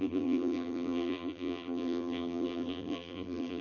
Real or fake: fake